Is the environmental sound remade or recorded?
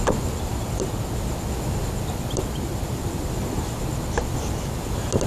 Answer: recorded